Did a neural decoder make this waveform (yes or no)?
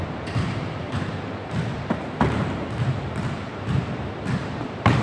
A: yes